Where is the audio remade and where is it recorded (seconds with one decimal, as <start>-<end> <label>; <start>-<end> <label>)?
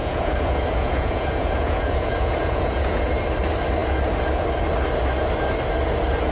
0.0-3.1 remade; 3.1-6.3 recorded